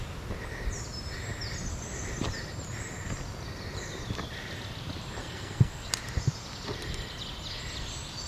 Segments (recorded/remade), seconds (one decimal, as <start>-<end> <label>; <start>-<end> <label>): 0.0-5.2 recorded; 5.2-5.9 remade; 5.9-8.3 recorded